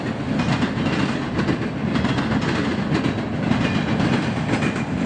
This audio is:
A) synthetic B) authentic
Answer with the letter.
B